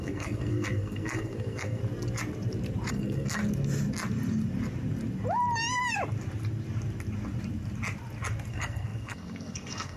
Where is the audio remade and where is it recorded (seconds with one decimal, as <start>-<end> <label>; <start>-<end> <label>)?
0.0-1.8 remade; 1.8-2.9 recorded; 2.9-3.4 remade; 3.4-8.5 recorded; 8.5-10.0 remade

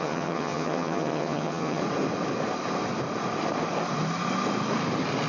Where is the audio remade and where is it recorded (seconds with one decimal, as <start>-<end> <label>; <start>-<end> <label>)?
0.0-1.8 remade; 1.8-5.3 recorded

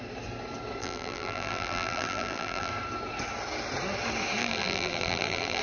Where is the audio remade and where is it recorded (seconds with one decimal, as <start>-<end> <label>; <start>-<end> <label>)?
0.0-0.8 recorded; 0.8-2.7 remade; 2.7-4.4 recorded; 4.4-5.6 remade

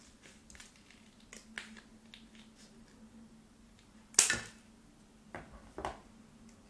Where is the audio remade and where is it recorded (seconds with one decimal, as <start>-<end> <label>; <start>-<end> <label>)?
0.0-6.7 recorded

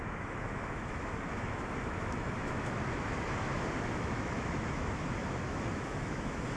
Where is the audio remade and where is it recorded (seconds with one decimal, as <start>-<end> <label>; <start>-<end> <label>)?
0.0-6.6 remade

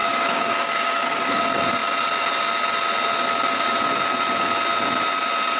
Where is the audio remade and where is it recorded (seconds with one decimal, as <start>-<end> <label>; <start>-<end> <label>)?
0.0-1.4 remade; 1.4-5.6 recorded

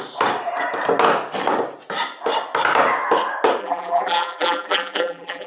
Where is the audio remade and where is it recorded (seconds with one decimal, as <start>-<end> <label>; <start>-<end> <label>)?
0.0-3.6 recorded; 3.6-5.5 remade